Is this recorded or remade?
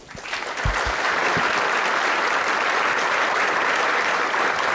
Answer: recorded